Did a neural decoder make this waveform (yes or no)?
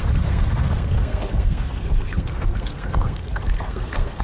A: yes